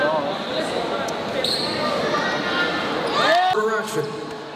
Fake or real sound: real